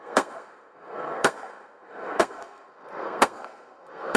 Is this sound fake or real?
fake